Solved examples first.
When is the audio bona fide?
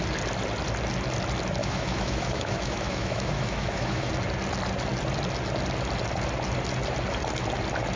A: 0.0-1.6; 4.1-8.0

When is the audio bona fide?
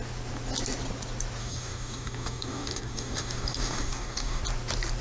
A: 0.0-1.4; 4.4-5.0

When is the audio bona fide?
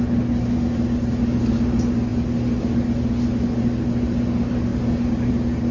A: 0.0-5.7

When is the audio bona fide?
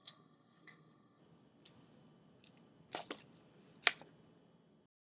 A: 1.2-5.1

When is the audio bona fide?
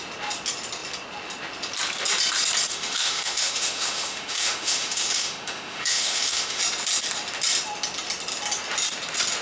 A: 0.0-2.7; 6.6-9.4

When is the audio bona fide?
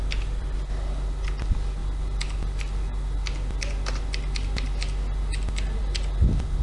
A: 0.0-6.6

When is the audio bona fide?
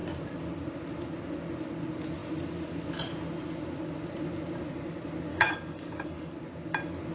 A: 0.0-5.3; 6.4-7.1